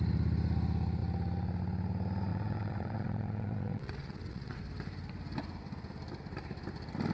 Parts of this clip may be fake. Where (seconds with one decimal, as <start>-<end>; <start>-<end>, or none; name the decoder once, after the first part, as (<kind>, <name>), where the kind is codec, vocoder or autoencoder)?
2.3-4.6 (vocoder, WaveNeXt)